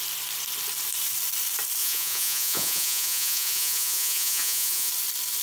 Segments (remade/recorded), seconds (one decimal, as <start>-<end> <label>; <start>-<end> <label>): 0.0-1.8 recorded; 1.8-4.9 remade; 4.9-5.4 recorded